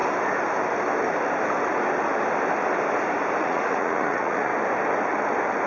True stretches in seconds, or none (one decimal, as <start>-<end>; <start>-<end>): 0.0-3.4; 4.5-5.7